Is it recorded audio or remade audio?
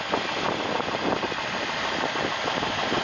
recorded